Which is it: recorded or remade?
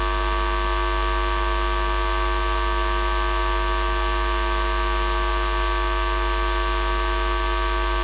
recorded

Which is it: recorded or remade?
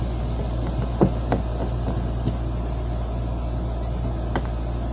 recorded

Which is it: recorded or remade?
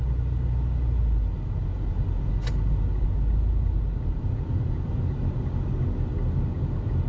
recorded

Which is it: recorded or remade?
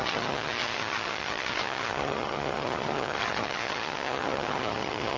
remade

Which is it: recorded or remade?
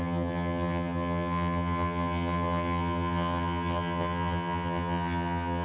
remade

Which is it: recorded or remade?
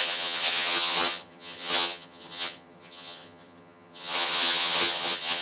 remade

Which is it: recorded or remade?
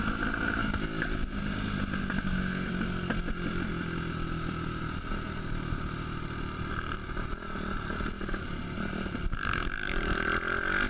recorded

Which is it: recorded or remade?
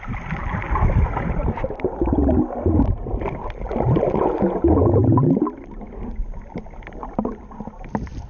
recorded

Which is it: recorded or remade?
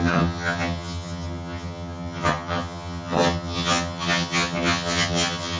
remade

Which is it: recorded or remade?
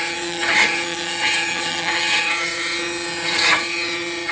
remade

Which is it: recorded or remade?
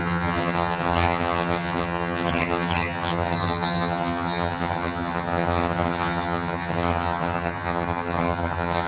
remade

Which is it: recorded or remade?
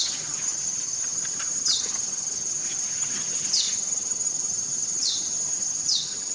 remade